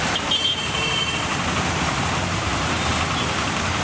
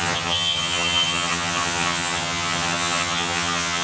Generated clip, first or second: second